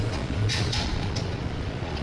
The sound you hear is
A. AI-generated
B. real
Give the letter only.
A